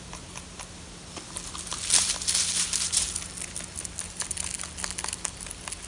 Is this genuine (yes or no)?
yes